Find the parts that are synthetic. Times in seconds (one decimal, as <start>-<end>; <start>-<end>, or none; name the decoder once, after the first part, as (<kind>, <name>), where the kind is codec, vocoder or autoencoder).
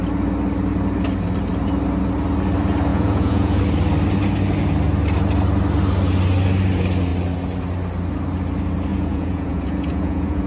2.9-3.6 (vocoder, Vocos); 8.9-10.5